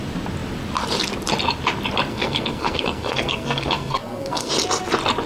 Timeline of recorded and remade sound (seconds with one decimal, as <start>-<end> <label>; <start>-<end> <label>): 0.0-2.1 recorded; 2.1-4.5 remade; 4.5-5.3 recorded